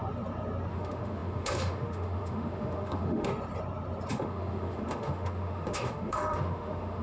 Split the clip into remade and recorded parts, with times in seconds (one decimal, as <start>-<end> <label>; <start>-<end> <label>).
0.0-0.7 recorded; 0.7-3.3 remade; 3.3-4.1 recorded; 4.1-7.0 remade